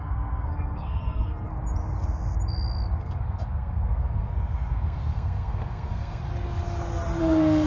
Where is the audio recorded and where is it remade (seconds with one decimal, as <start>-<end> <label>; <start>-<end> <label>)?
0.0-1.5 remade; 1.5-3.0 recorded; 3.0-6.2 remade; 6.2-7.2 recorded; 7.2-7.7 remade